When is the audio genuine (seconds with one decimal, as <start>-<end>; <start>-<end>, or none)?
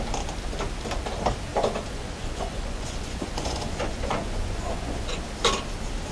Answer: 0.0-1.5; 5.2-6.1